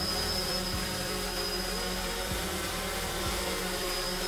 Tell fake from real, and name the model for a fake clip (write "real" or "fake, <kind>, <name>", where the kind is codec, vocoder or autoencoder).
fake, vocoder, BigVGAN v2